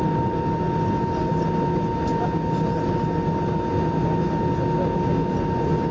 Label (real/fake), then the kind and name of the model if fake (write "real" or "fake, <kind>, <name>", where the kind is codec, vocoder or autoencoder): real